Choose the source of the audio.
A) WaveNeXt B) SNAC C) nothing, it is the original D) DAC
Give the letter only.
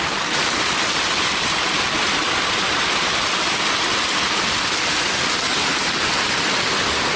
C